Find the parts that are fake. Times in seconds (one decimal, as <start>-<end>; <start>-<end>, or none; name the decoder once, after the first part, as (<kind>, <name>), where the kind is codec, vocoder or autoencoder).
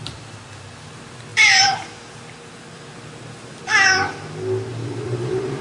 4.7-5.6 (vocoder, BigVGAN v2)